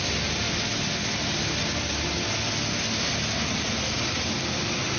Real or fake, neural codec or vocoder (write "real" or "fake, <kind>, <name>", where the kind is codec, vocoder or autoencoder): real